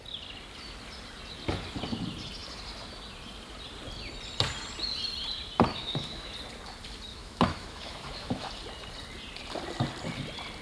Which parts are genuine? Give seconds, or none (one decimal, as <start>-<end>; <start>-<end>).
0.0-5.7; 6.3-7.1; 8.5-10.6